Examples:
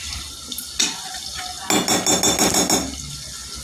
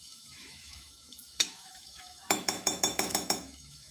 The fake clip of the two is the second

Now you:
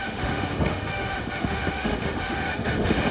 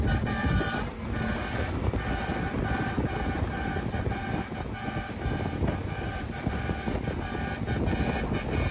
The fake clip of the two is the first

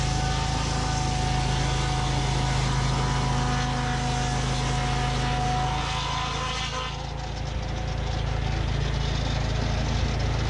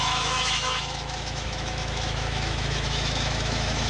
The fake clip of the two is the second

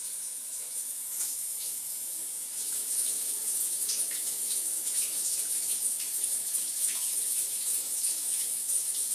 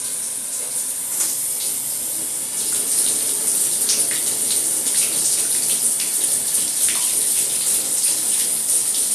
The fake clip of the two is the first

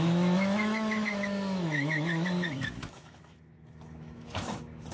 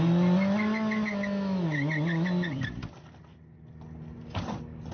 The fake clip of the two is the first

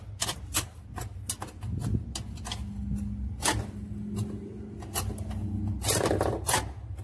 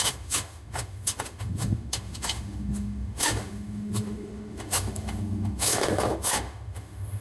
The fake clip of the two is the second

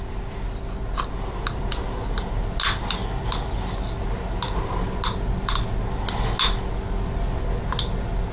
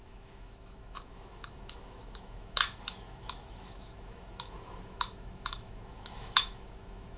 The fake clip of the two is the second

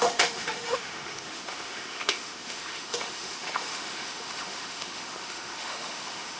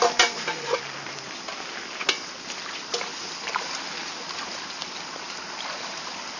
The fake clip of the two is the first